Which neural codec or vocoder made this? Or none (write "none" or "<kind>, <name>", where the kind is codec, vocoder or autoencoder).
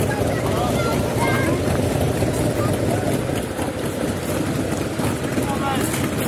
none